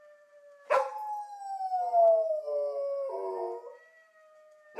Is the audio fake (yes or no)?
no